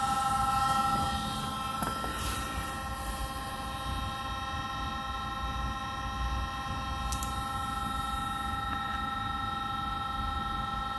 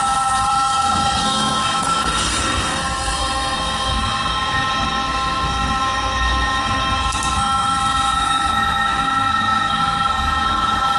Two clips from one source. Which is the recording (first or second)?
first